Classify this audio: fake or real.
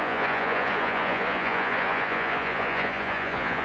fake